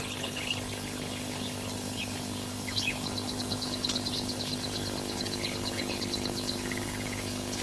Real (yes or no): no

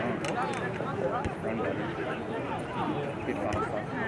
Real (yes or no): yes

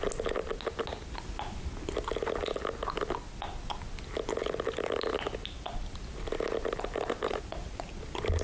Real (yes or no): yes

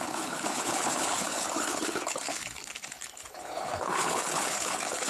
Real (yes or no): no